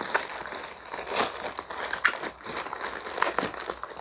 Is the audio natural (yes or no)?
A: yes